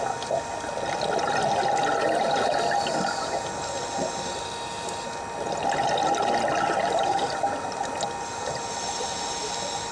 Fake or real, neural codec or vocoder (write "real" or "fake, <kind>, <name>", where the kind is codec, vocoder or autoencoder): real